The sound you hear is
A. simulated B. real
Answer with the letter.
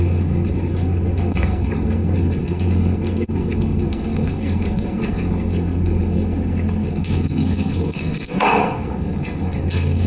A